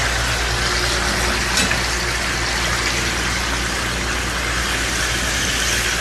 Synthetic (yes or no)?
no